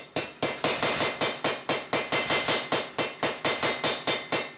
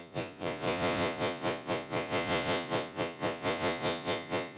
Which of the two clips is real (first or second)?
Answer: first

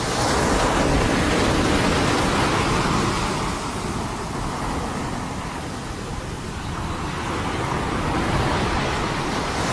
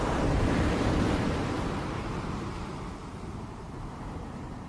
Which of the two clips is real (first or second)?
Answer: first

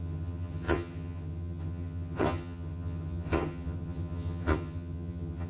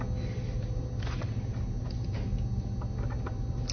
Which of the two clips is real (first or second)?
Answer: second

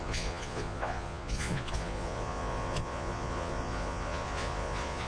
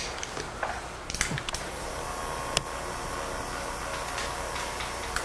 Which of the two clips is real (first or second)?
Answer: second